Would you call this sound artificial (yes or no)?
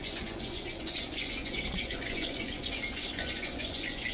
yes